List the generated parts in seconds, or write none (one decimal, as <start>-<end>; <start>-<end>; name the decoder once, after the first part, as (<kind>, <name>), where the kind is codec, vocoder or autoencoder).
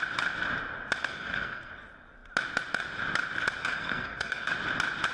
1.0-1.7 (codec, SNAC); 3.6-4.5